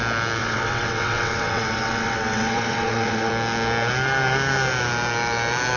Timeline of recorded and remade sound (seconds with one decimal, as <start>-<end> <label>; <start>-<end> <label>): 0.0-0.4 recorded; 0.4-3.3 remade; 3.3-5.8 recorded